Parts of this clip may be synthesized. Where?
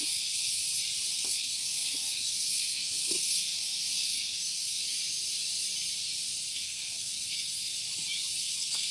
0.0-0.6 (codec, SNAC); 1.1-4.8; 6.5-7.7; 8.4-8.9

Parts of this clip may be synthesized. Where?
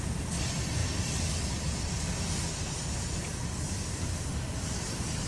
none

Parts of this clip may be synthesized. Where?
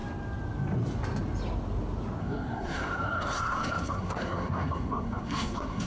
2.2-5.9 (codec, SNAC)